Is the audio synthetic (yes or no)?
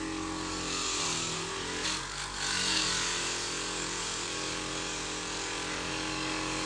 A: yes